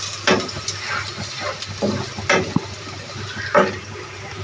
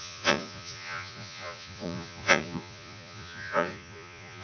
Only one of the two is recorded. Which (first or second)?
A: first